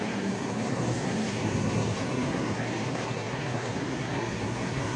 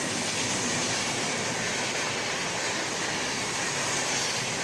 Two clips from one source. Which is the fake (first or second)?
first